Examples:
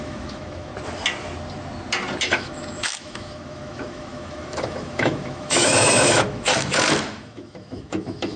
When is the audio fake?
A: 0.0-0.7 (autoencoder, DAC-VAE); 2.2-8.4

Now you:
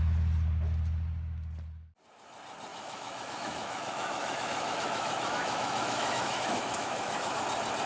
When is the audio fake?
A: 2.7-7.4 (autoencoder, DAC-VAE)

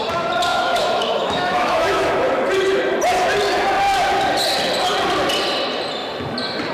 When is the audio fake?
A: 0.5-2.1 (autoencoder, DAC-VAE)

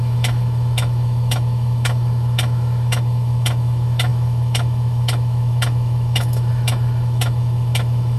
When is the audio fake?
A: 0.0-8.2 (autoencoder, DAC-VAE)